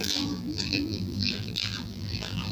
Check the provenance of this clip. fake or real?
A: fake